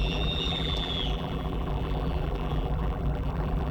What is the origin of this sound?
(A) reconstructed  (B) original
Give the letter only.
A